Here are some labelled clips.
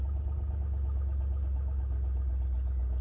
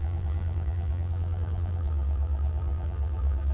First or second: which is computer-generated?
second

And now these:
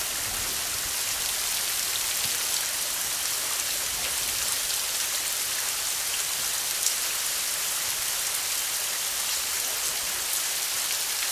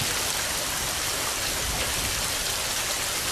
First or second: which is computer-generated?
second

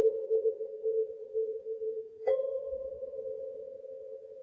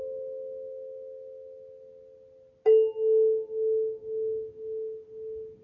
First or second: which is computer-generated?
first